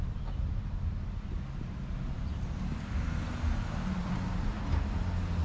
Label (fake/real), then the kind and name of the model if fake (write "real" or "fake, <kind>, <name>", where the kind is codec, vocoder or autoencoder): real